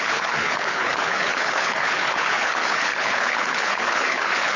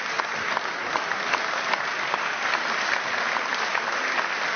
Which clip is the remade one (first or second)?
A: first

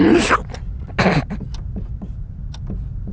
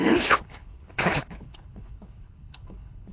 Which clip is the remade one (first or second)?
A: second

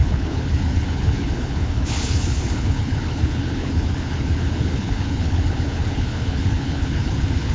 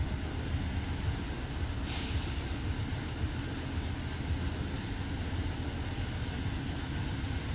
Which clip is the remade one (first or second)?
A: first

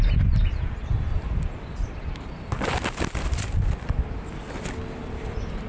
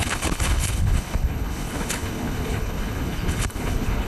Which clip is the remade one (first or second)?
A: second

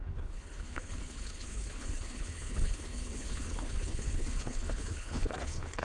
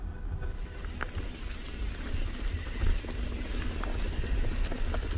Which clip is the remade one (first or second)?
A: first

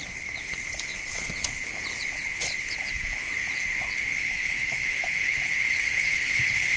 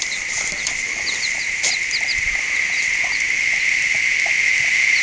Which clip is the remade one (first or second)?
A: first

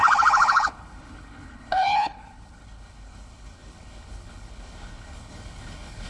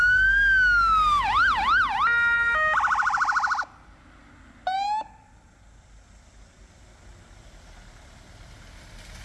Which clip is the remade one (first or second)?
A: first